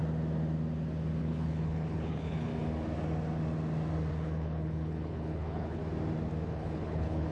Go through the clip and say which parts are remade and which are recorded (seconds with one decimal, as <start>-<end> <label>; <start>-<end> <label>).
0.0-1.2 recorded; 1.2-2.5 remade; 2.5-4.1 recorded; 4.1-5.8 remade; 5.8-6.5 recorded; 6.5-7.3 remade